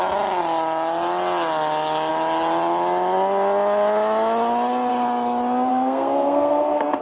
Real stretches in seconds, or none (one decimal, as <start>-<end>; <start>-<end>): 0.0-5.7